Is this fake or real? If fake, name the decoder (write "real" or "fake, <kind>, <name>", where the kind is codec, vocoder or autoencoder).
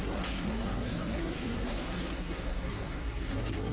fake, codec, SNAC